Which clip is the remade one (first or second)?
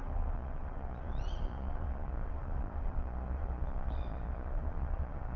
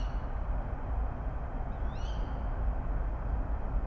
first